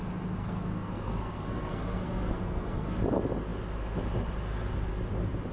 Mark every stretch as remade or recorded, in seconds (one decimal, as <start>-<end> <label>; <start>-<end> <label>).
0.0-0.4 recorded; 0.4-3.0 remade; 3.0-5.5 recorded